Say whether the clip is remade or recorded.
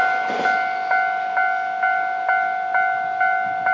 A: recorded